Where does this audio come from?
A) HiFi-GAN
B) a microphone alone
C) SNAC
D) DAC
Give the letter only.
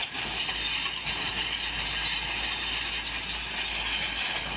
B